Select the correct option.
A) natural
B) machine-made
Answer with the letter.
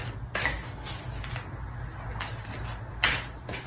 A